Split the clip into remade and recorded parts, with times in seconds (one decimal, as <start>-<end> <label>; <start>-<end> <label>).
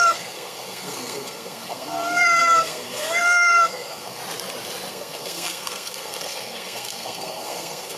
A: 0.0-4.2 remade; 4.2-4.9 recorded; 4.9-8.0 remade